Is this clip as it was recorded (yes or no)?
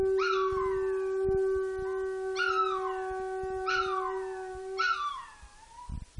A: yes